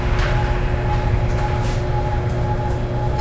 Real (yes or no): yes